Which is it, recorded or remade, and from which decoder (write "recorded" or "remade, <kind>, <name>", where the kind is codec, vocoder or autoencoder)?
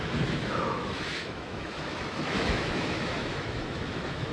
remade, autoencoder, DAC-VAE